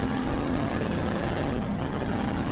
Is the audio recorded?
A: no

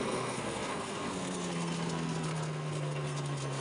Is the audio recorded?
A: no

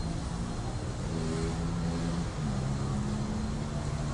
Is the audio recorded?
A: yes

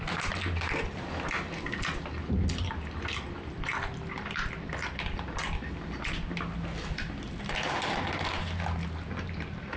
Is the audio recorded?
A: no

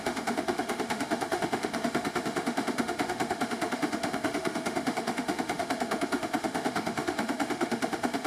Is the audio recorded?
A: no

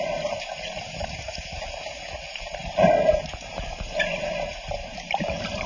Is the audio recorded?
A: no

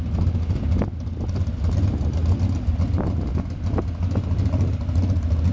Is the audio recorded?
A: yes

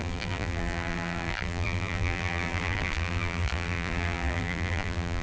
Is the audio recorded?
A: no